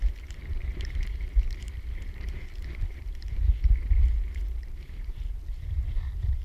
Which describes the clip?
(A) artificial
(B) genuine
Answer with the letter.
A